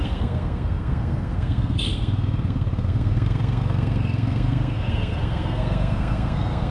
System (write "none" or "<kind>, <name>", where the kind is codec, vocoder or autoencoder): codec, SNAC